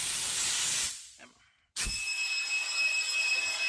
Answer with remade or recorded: recorded